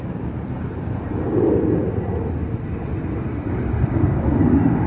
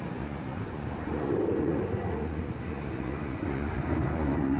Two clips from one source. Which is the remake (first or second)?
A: second